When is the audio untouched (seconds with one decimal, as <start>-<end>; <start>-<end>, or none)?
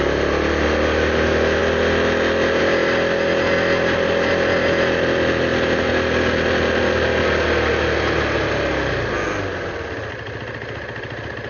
0.0-11.5